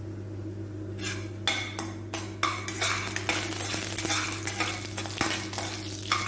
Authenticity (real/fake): real